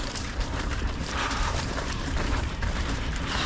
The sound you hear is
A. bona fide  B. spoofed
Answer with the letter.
B